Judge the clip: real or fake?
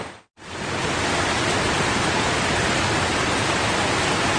real